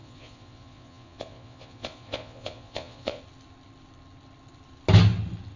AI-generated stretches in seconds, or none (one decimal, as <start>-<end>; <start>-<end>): 0.0-3.2